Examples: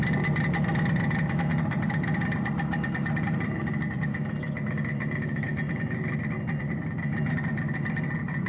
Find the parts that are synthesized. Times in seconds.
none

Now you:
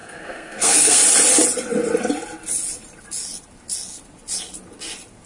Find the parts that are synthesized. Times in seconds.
0.0-1.0

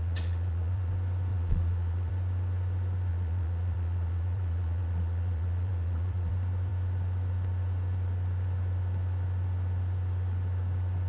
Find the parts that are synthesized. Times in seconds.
0.0-0.9; 1.3-2.1; 3.1-6.3

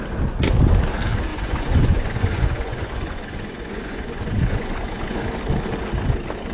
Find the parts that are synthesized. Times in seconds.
1.3-5.2

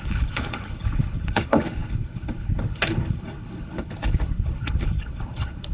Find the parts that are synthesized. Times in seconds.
0.0-5.7